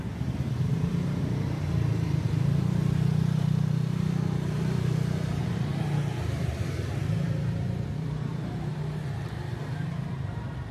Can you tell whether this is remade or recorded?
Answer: remade